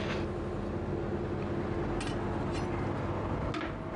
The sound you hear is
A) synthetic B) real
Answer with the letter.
B